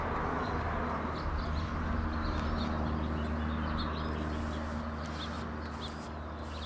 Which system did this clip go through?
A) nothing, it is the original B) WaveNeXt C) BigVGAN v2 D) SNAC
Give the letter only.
A